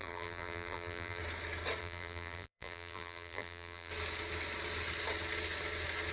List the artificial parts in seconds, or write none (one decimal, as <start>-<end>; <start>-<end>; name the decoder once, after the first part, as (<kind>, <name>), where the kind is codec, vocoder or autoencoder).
0.0-1.2 (vocoder, BigVGAN v2); 1.8-3.9